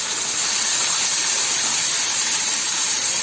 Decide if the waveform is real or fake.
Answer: fake